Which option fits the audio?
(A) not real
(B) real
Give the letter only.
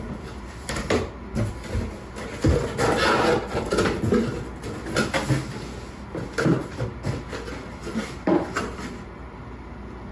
B